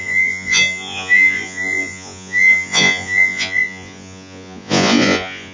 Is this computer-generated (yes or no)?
yes